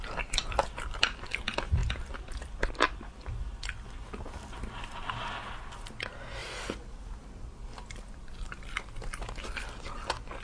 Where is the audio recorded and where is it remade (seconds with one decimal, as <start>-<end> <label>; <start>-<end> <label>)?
0.0-10.4 recorded